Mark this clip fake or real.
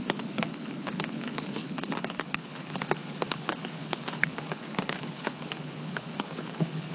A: fake